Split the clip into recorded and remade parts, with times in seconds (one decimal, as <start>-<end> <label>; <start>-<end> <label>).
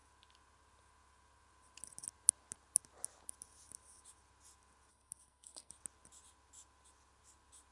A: 0.0-4.9 recorded; 4.9-5.7 remade; 5.7-7.7 recorded